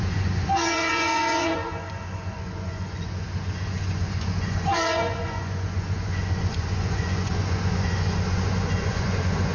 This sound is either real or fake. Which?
fake